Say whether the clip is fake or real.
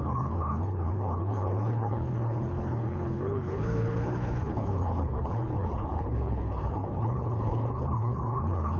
fake